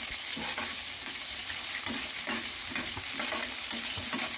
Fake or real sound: real